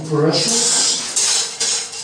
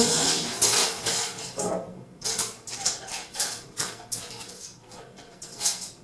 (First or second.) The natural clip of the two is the first